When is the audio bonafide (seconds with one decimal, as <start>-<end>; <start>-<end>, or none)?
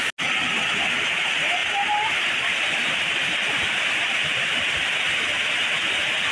0.0-6.3